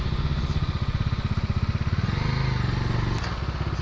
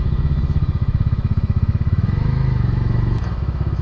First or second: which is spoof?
second